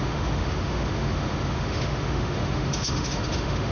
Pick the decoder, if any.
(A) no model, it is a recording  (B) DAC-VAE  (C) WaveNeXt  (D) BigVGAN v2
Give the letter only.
B